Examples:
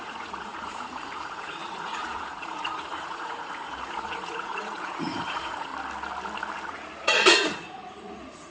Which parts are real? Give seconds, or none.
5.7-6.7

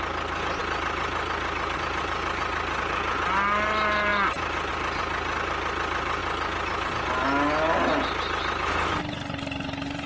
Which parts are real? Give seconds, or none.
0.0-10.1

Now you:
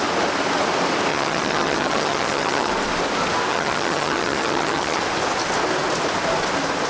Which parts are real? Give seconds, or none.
0.0-1.1; 2.7-3.5; 5.0-6.9

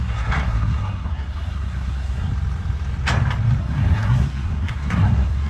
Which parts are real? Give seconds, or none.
2.3-3.6

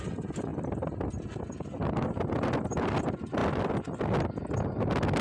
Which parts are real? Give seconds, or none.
0.0-5.2

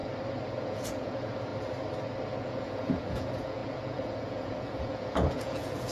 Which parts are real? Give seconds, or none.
0.0-0.6; 1.5-2.4

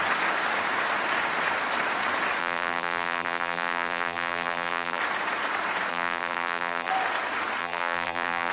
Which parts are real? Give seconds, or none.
0.0-2.4; 5.0-5.9; 6.9-7.6